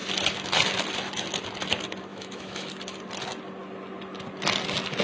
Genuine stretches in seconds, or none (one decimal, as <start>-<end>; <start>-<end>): 0.0-2.1; 2.7-5.0